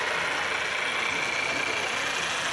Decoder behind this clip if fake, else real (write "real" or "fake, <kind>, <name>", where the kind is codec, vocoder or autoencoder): real